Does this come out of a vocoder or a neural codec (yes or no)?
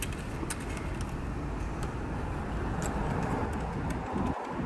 no